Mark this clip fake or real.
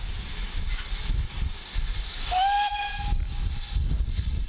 real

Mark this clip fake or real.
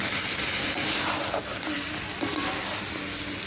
real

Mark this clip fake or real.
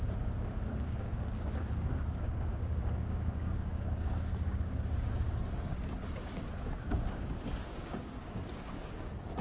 fake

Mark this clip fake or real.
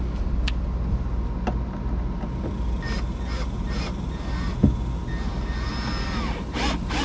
real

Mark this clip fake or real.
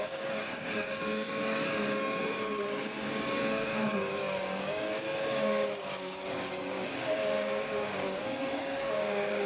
fake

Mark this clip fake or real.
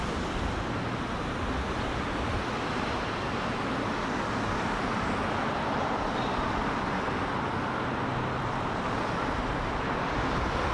real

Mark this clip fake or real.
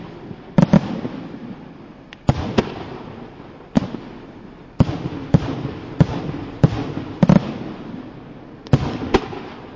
real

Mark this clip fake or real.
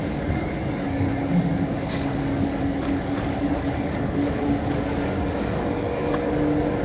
fake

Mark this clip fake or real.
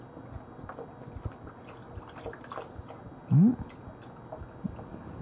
real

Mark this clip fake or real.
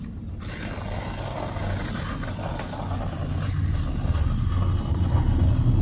real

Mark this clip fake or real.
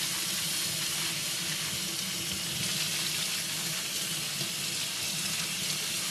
real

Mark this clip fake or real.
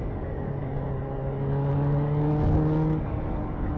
fake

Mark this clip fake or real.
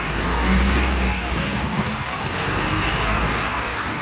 fake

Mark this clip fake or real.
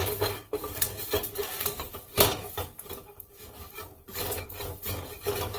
fake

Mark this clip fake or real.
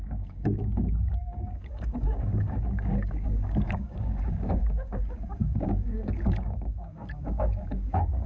fake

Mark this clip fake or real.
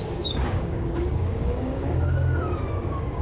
fake